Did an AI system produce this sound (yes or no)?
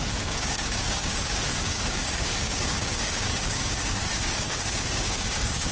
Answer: yes